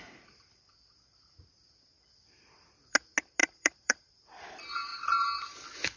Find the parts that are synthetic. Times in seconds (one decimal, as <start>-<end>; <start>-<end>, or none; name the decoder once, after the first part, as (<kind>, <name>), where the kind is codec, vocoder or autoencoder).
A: 3.4-4.1 (vocoder, BigVGAN v2)